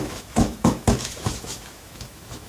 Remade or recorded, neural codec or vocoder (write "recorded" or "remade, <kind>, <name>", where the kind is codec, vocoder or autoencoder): remade, autoencoder, DAC-VAE